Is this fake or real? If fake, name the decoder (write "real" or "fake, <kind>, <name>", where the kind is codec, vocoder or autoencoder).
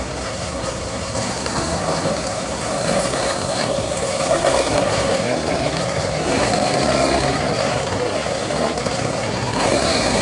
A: fake, codec, SNAC